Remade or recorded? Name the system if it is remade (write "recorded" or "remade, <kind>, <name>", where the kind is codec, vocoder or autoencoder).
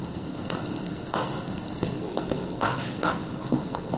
remade, codec, SNAC